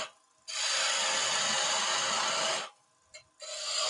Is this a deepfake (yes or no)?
no